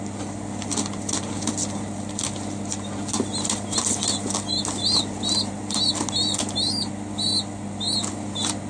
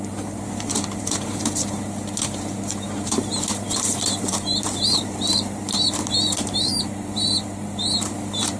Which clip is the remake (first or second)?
second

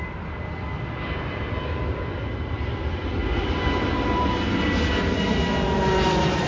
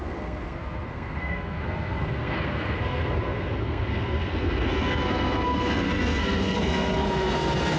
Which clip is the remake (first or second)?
second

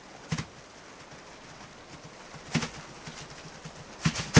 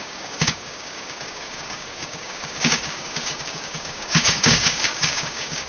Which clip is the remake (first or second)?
second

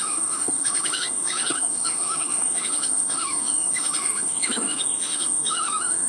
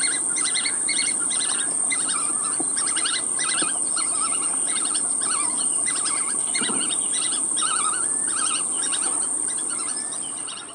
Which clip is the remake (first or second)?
first